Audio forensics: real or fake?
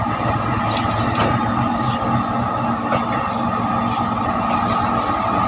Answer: real